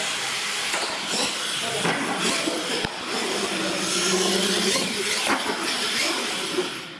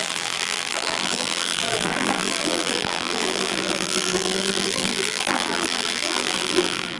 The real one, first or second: first